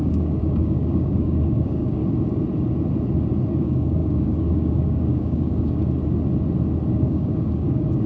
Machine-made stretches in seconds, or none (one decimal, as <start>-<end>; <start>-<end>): 0.0-2.0; 3.5-5.8; 6.9-8.1